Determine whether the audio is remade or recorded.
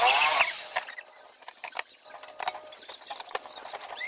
recorded